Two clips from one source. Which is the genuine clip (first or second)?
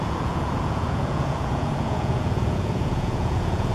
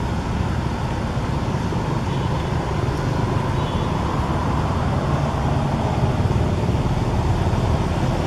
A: second